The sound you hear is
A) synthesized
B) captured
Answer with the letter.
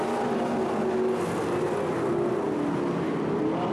B